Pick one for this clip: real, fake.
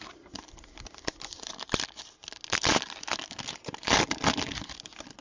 real